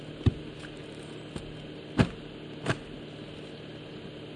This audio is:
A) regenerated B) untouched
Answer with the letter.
B